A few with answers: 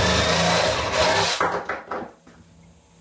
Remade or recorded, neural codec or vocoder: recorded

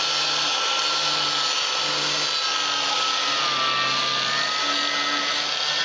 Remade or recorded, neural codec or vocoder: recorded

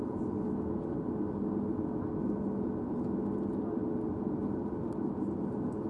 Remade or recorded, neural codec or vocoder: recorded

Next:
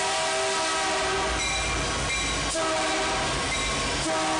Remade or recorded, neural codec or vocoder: recorded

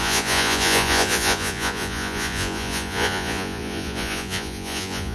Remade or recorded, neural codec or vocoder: remade, vocoder, Vocos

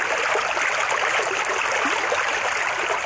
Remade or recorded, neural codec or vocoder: recorded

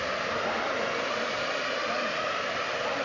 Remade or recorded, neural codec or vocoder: recorded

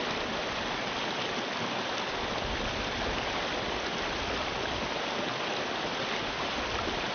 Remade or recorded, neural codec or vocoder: recorded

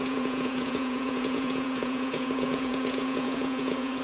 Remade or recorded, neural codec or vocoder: remade, vocoder, Vocos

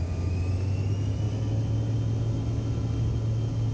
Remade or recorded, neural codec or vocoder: recorded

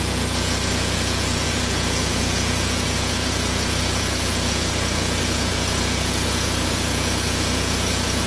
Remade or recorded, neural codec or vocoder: remade, vocoder, Vocos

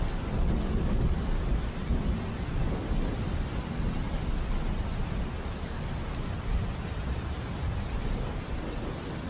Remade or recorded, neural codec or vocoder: recorded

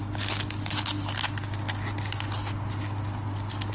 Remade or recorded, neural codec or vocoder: recorded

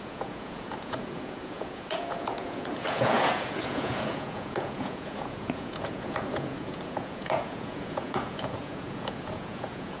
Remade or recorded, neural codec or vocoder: remade, vocoder, Vocos